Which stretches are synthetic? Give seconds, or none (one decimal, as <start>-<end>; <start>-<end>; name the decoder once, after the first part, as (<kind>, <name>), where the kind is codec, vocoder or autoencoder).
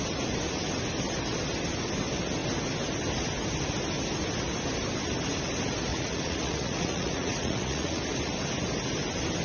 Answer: 5.9-8.0 (vocoder, Vocos)